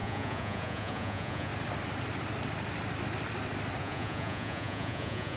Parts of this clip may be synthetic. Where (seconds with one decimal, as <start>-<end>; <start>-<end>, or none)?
0.0-1.5; 3.8-5.4